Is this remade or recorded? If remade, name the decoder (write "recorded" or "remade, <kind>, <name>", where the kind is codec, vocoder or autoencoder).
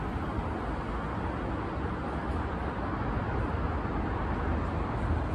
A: recorded